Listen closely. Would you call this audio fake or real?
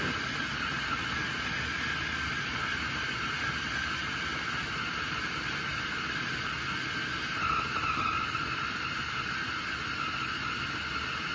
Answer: real